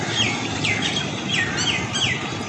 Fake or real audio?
real